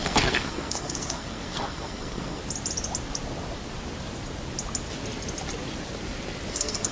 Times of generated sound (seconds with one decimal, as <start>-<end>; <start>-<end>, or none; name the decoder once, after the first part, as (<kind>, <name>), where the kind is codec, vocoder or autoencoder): 0.0-2.4 (codec, SNAC); 6.5-6.9

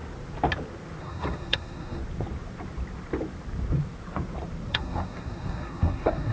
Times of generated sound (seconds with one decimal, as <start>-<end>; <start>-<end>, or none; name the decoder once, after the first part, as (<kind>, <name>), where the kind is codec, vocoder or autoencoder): 1.0-2.0 (codec, SNAC); 4.7-6.3